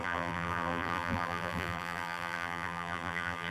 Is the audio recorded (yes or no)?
no